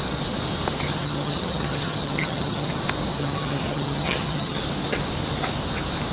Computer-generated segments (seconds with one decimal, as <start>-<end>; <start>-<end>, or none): 0.9-2.7; 3.1-4.6